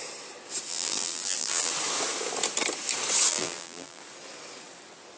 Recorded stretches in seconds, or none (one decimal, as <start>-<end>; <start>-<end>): 0.0-0.7; 1.7-3.3; 4.0-5.2